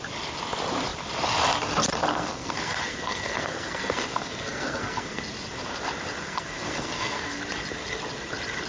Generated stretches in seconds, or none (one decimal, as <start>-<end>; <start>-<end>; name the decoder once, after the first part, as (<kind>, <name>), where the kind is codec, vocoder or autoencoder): 2.1-5.2 (codec, SNAC); 6.2-7.4